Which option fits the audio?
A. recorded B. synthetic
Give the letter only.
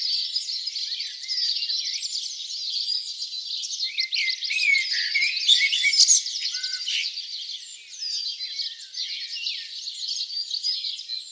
A